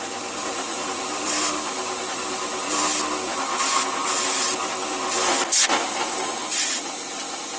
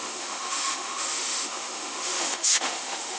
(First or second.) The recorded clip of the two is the first